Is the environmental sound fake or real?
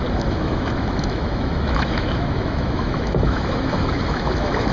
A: fake